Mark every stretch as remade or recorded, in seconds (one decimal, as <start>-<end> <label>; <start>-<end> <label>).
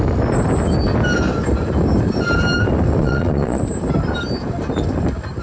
0.0-3.0 recorded; 3.0-3.6 remade; 3.6-5.4 recorded